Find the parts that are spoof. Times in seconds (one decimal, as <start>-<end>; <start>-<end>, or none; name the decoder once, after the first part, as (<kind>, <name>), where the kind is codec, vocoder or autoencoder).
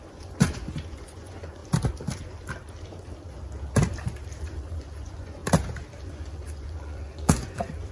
0.0-1.6 (vocoder, Vocos); 4.4-5.4; 6.0-7.9